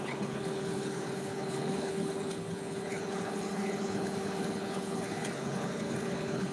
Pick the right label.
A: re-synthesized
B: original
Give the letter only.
A